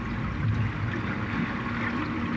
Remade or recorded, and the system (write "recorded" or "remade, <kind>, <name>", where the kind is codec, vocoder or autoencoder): recorded